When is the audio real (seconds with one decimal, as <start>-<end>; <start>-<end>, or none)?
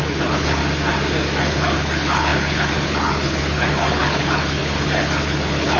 0.6-1.4